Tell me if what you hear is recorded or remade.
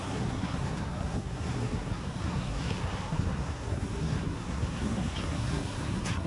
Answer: remade